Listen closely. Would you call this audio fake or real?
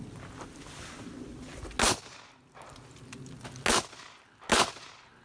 real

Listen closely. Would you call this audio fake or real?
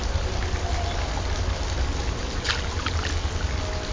real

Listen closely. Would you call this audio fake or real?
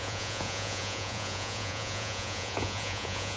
fake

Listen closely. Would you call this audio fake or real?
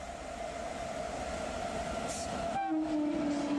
real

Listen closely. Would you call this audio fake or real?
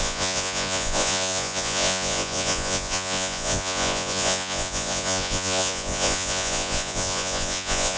fake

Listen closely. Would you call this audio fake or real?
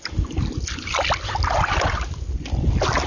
real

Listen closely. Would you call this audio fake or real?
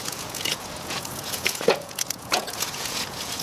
fake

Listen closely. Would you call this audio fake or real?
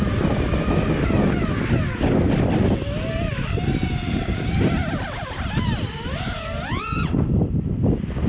real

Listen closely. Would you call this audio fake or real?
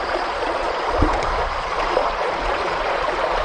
fake